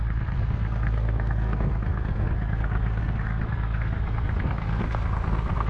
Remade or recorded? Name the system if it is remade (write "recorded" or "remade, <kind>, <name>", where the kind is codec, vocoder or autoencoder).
remade, codec, SNAC